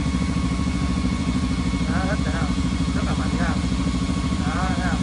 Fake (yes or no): yes